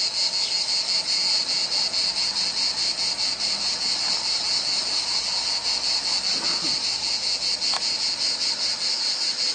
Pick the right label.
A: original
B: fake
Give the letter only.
A